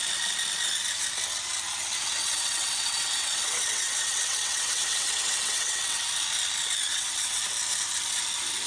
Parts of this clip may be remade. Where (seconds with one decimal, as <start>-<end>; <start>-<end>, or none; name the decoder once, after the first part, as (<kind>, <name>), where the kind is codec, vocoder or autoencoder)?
2.2-6.1 (vocoder, WaveNeXt); 6.9-7.4